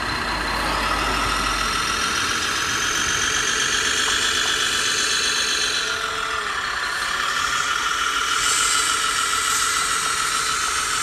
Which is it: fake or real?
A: real